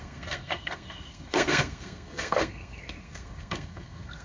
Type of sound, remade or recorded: remade